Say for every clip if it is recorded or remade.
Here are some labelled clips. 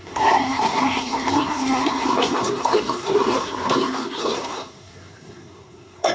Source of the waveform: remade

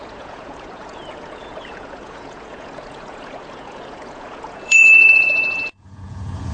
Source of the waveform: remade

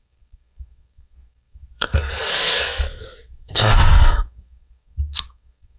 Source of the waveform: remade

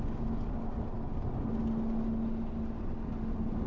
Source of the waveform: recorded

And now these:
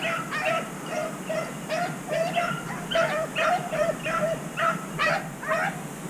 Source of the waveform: recorded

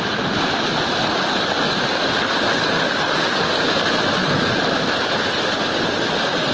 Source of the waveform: recorded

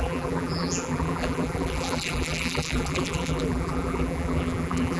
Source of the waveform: remade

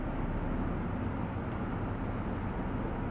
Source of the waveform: recorded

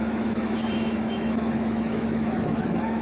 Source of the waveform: remade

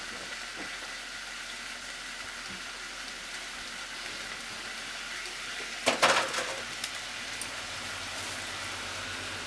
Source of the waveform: recorded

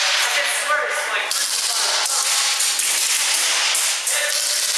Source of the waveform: recorded